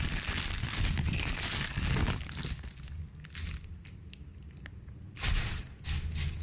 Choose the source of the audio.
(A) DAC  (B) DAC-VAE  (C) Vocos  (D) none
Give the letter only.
D